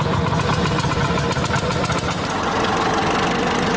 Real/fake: real